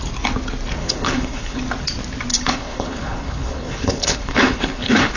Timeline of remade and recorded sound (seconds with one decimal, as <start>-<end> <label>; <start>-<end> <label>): 0.0-0.8 recorded; 0.8-1.6 remade; 1.6-2.3 recorded; 2.3-5.2 remade